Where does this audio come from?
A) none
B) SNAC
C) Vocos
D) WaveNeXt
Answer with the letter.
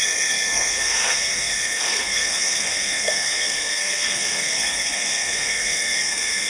B